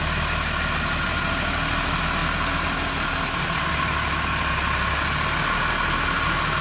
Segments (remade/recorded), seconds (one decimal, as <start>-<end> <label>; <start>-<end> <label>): 0.0-6.6 recorded